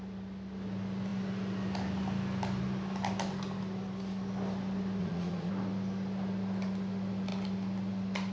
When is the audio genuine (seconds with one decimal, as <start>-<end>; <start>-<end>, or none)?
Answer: 0.0-5.0; 5.5-8.3